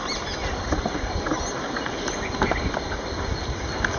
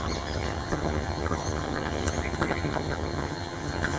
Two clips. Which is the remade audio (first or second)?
second